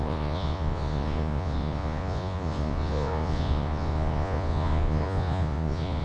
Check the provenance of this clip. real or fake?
fake